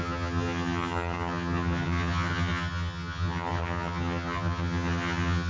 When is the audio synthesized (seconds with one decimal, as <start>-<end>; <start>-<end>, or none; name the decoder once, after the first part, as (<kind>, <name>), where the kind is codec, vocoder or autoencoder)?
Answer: 0.0-5.5 (vocoder, HiFi-GAN)